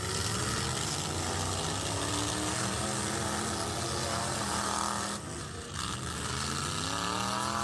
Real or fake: real